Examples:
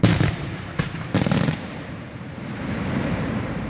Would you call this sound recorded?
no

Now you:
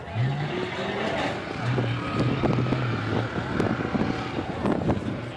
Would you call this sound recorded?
yes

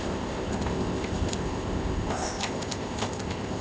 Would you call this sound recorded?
no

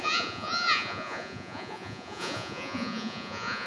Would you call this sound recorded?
no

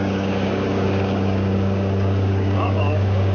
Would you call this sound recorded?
no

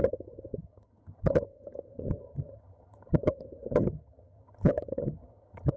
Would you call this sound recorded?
no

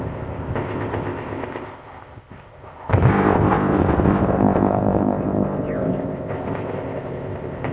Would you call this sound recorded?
no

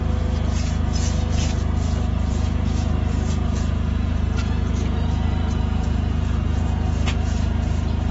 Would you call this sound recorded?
no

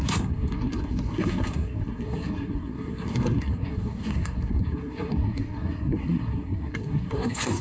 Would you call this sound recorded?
no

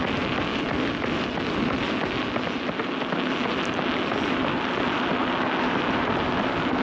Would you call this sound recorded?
yes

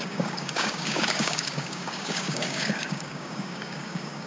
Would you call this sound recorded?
no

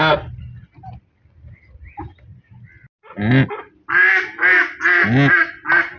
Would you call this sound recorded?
yes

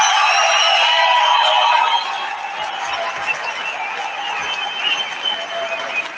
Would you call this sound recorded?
yes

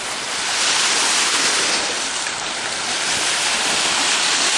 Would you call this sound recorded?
yes